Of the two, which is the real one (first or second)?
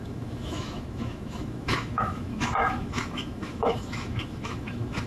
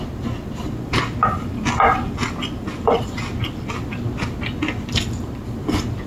second